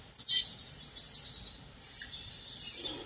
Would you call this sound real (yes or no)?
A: yes